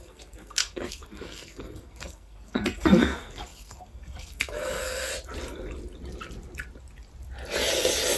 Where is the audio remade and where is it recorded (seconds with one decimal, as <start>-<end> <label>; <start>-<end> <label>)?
0.0-5.1 remade; 5.1-8.2 recorded